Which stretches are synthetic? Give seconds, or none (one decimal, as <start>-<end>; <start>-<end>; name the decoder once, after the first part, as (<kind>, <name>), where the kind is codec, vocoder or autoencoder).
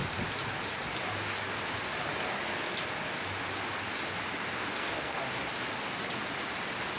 4.7-5.2 (codec, SNAC)